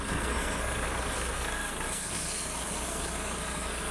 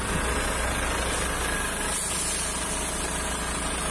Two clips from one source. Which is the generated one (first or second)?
first